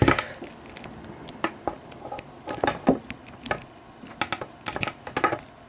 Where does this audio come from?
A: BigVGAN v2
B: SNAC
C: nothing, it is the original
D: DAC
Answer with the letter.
C